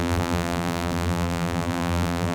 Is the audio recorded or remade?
remade